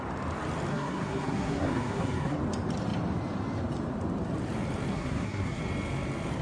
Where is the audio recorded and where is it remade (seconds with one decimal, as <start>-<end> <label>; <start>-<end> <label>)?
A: 0.0-0.7 recorded; 0.7-2.4 remade; 2.4-4.9 recorded; 4.9-5.6 remade; 5.6-6.4 recorded